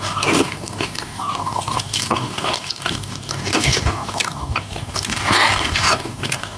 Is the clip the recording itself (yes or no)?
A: no